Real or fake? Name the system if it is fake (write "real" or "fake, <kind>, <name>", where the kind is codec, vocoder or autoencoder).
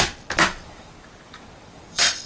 fake, vocoder, BigVGAN v2